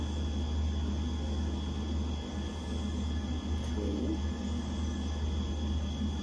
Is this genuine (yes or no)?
yes